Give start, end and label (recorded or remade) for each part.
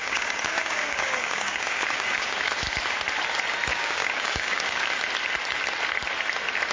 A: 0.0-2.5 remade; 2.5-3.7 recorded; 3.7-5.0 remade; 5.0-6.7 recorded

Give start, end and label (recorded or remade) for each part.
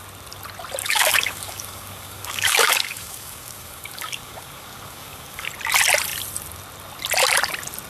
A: 0.0-0.8 recorded; 0.8-5.5 remade; 5.5-7.9 recorded